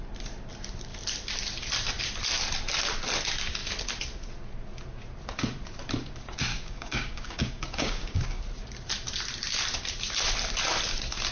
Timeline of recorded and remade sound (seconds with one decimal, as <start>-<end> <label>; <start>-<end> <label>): 0.0-6.5 recorded; 6.5-8.4 remade; 8.4-11.3 recorded